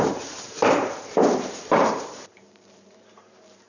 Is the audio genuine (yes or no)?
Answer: no